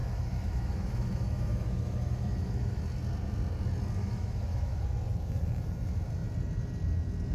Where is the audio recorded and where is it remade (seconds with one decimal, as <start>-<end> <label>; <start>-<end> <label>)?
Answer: 0.0-2.8 remade; 2.8-4.0 recorded; 4.0-4.8 remade; 4.8-7.3 recorded